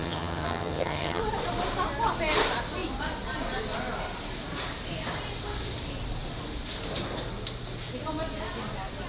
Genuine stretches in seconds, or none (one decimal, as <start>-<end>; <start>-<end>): 1.2-9.1